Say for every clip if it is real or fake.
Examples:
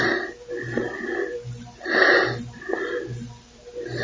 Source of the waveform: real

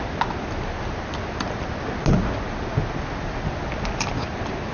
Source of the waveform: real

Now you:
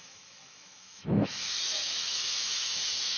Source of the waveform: fake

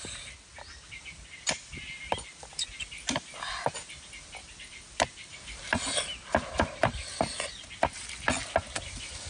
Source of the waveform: real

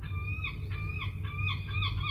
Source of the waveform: real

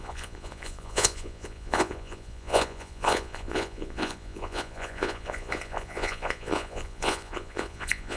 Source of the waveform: fake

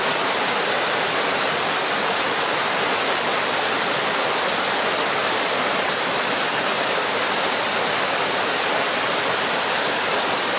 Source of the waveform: real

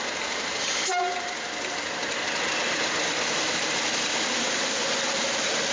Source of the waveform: real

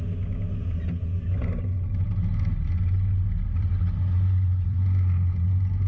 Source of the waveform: real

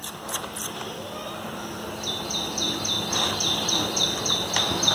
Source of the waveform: real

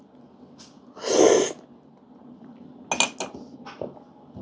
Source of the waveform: real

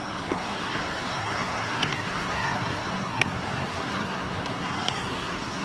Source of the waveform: fake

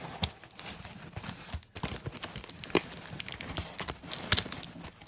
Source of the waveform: real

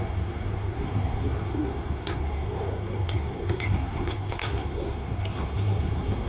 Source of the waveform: fake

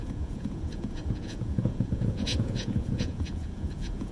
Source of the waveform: fake